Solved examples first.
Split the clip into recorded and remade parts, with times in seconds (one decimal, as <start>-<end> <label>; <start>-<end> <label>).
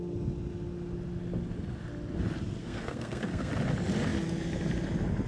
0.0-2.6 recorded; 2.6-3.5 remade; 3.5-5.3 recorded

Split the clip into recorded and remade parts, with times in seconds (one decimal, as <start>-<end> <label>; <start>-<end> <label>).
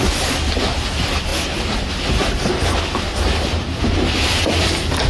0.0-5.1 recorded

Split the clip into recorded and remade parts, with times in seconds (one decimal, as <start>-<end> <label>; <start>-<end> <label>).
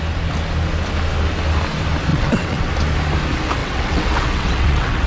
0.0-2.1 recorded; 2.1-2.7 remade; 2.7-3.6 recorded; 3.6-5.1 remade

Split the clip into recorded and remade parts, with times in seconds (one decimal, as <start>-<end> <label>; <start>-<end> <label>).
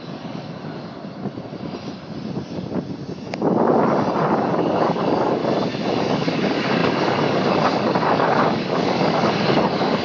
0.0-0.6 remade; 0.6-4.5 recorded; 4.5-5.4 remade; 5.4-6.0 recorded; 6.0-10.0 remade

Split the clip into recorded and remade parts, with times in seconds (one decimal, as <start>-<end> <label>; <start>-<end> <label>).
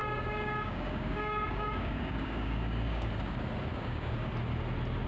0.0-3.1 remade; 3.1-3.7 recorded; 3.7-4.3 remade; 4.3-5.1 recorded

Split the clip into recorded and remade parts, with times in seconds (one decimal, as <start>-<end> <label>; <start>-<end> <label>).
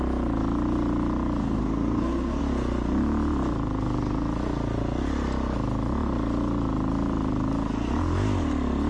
0.0-1.4 recorded; 1.4-2.4 remade; 2.4-8.9 recorded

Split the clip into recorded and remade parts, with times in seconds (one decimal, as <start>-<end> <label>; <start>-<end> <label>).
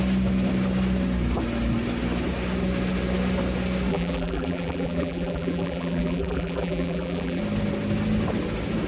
0.0-3.9 recorded; 3.9-7.4 remade; 7.4-8.9 recorded